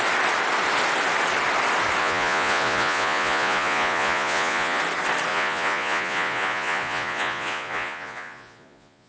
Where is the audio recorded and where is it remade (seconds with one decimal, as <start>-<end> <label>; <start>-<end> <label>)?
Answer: 0.0-2.0 recorded; 2.0-4.8 remade; 4.8-5.3 recorded; 5.3-9.1 remade